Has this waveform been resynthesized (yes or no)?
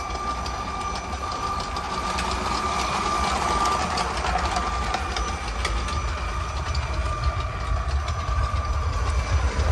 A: no